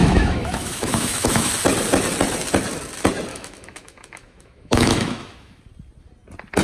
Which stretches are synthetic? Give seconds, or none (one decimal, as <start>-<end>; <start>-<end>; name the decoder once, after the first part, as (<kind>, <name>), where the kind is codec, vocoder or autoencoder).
0.0-1.5 (autoencoder, DAC-VAE); 3.3-5.6